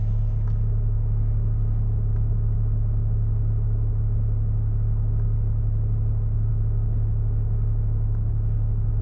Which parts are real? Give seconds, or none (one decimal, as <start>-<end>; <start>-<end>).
0.0-9.0